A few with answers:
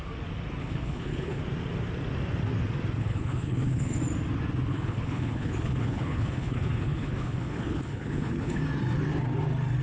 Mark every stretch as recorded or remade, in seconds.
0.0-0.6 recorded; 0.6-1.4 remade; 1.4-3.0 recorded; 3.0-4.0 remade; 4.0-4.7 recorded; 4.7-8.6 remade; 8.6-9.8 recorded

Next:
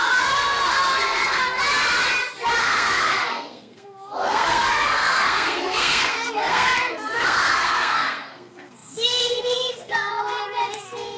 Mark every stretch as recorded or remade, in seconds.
0.0-1.6 remade; 1.6-2.6 recorded; 2.6-11.2 remade